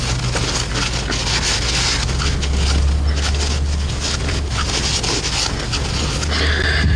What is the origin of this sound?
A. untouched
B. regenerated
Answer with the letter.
A